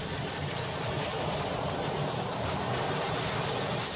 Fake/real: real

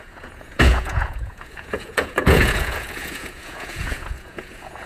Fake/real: fake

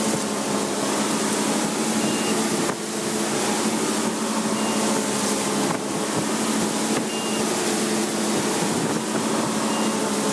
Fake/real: real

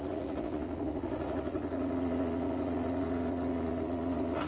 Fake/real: fake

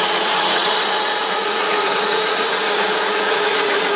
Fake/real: fake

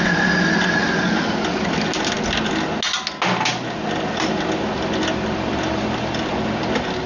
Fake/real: real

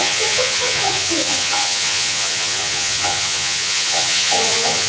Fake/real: fake